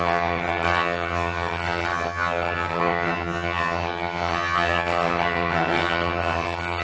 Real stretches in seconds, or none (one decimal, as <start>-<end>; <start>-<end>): none